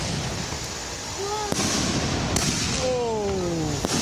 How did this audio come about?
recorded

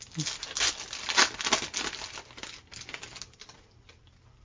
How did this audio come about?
recorded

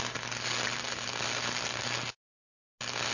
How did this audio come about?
recorded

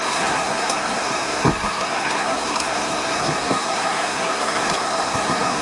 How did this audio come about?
remade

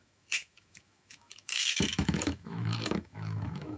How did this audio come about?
remade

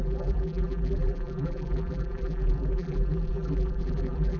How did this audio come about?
remade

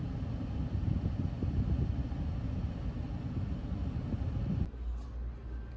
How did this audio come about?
recorded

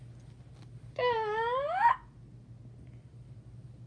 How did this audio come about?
recorded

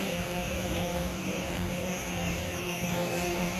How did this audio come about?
remade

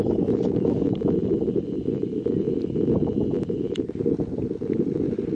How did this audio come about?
recorded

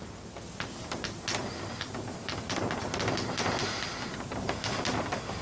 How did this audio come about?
recorded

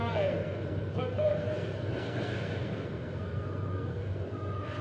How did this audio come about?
remade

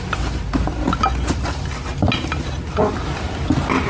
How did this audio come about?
recorded